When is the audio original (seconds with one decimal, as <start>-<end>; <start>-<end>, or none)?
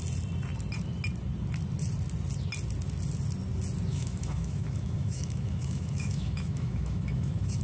0.0-3.9